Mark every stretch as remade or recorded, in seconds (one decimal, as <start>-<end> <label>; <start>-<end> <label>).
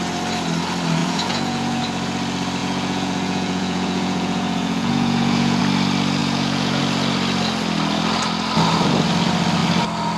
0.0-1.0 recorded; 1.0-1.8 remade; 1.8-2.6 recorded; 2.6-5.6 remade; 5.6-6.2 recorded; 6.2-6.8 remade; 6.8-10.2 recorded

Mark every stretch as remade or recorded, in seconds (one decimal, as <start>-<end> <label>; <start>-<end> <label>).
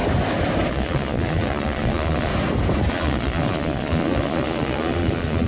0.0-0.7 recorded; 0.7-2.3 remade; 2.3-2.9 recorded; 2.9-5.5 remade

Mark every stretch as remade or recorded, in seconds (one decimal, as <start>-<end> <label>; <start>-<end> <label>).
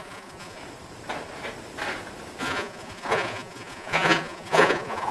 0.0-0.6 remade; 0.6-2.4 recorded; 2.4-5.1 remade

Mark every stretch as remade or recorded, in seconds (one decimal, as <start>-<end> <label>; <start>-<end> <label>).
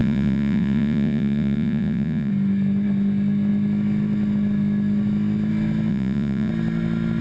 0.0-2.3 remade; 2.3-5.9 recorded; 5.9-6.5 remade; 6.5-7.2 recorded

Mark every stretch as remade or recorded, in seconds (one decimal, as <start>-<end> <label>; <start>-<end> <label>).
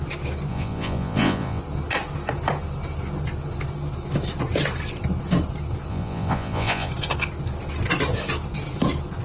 0.0-0.5 recorded; 0.5-1.6 remade; 1.6-5.9 recorded; 5.9-6.9 remade; 6.9-9.2 recorded